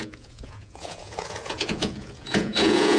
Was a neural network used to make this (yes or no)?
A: yes